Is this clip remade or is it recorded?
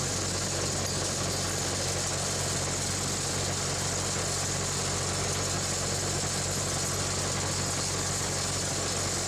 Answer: recorded